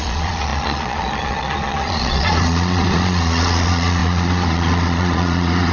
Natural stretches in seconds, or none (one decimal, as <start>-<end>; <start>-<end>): none